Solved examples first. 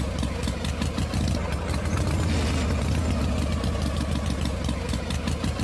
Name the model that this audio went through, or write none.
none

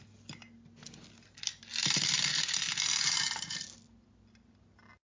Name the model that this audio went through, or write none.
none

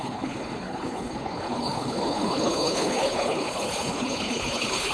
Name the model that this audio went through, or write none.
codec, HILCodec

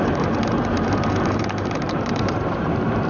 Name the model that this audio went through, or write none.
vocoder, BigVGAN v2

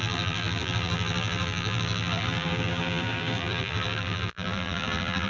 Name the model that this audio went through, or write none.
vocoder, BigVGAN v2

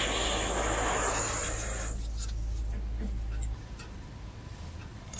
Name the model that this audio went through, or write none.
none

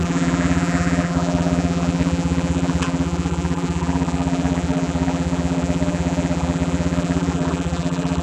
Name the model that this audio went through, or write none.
vocoder, BigVGAN v2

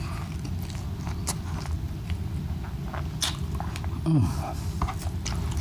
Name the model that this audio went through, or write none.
none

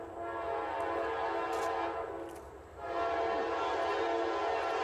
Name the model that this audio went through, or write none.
none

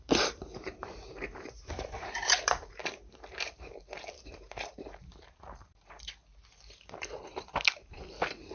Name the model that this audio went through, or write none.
vocoder, BigVGAN v2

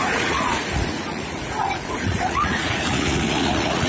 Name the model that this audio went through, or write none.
vocoder, Vocos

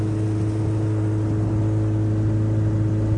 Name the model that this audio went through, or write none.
none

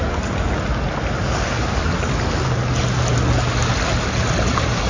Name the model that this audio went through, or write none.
none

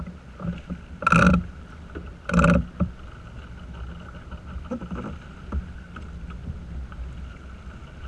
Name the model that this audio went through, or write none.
none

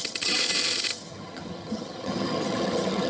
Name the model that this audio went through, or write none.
vocoder, HiFi-GAN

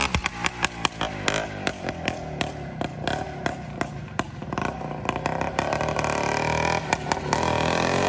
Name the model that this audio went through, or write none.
none